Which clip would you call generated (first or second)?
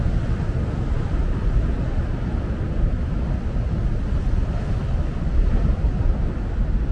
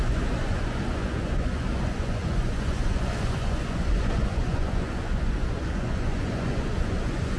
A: second